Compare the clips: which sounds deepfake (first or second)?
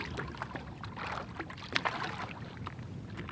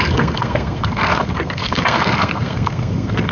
second